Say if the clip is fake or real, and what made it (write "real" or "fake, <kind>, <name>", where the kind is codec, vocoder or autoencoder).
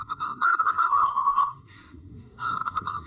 fake, codec, SNAC